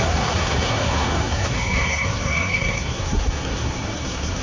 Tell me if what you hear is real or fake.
fake